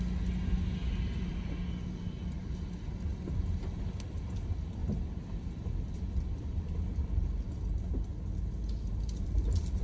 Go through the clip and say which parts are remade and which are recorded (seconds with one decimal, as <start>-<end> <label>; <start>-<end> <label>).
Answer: 0.0-4.8 recorded; 4.8-5.7 remade; 5.7-9.8 recorded